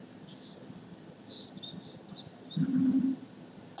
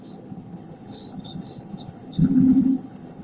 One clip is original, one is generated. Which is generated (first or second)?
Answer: second